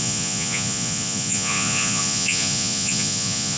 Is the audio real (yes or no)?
no